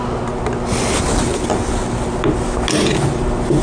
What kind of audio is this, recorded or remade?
recorded